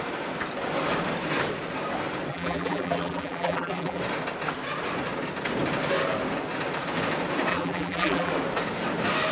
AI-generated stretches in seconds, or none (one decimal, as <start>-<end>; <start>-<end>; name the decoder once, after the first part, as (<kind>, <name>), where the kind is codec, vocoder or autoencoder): 2.3-4.0 (vocoder, BigVGAN v2); 7.5-8.3